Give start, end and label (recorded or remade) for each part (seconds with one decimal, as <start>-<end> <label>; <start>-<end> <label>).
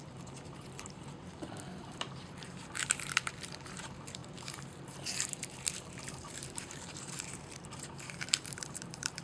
0.0-9.2 remade